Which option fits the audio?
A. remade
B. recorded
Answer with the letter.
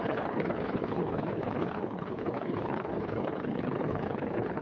A